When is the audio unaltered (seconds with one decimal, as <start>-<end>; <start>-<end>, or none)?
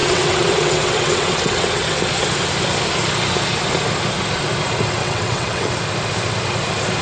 2.0-5.0; 5.7-7.0